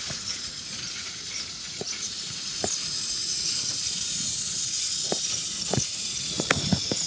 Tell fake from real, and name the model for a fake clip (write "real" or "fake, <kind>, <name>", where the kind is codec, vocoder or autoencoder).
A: fake, vocoder, Vocos